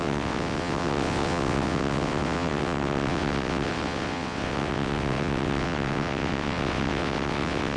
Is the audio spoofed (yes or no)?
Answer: yes